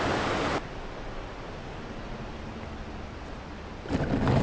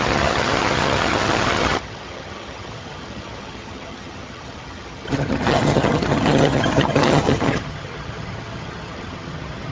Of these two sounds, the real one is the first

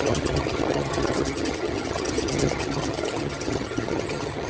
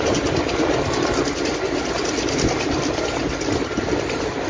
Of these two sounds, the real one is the second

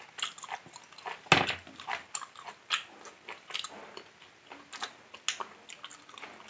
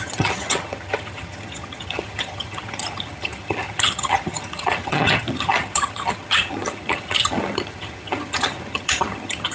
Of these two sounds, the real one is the first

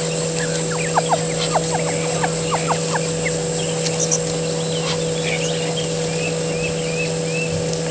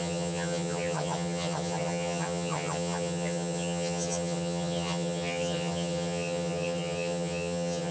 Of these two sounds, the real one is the first